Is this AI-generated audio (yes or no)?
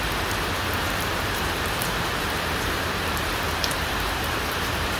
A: yes